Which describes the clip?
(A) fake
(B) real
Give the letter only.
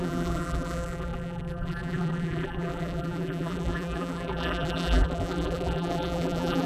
A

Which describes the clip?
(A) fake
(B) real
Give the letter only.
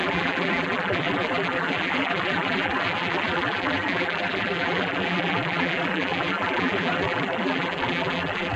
A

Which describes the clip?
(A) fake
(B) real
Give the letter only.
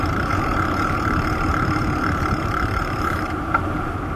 A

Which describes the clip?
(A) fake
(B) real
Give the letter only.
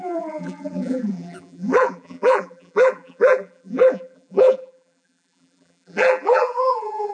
A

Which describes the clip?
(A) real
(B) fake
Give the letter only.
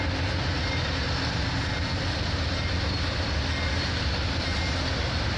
A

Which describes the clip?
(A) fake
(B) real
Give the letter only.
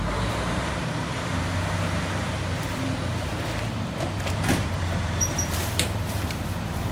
A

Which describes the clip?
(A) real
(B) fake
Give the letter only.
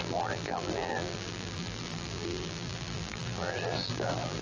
B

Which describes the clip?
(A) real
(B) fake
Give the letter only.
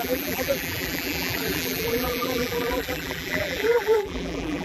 B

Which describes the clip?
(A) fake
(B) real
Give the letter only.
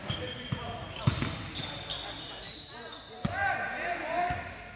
B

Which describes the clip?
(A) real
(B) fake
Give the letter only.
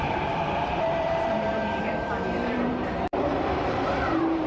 B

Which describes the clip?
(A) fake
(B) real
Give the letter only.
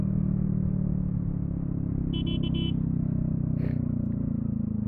B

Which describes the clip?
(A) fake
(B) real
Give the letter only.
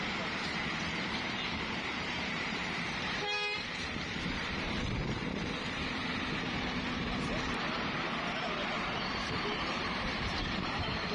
A